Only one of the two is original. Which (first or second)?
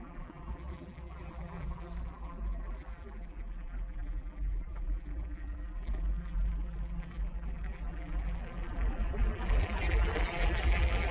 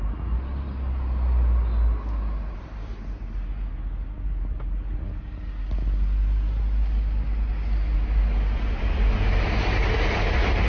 second